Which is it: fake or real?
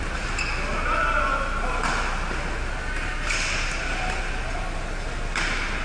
real